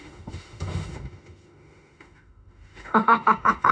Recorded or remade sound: remade